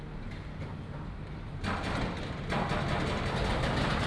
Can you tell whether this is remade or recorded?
recorded